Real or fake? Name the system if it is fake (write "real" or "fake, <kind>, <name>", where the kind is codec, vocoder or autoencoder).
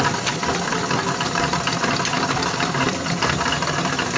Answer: fake, vocoder, BigVGAN v2